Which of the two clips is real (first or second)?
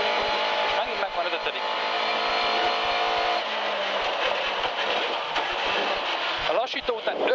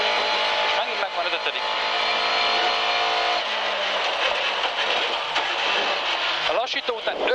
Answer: second